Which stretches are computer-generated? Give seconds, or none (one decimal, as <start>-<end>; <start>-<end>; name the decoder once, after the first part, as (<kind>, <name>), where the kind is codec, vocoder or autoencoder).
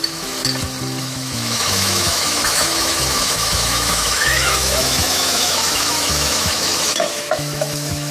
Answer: 0.0-0.4 (autoencoder, DAC-VAE); 1.0-8.1